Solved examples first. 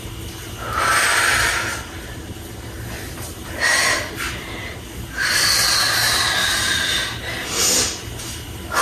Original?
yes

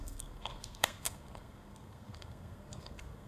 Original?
no